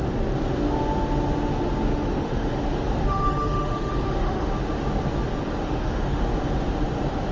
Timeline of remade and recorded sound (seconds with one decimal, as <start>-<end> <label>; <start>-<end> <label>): 0.0-1.9 recorded; 1.9-2.5 remade; 2.5-3.0 recorded; 3.0-4.5 remade; 4.5-5.6 recorded; 5.6-6.2 remade; 6.2-7.3 recorded